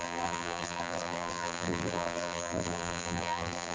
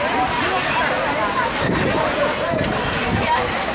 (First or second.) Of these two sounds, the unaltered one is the second